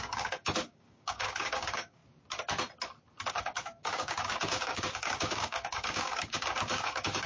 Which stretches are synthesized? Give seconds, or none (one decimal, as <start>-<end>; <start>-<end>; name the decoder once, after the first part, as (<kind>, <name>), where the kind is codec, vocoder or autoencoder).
0.0-2.0 (codec, DAC); 3.3-7.3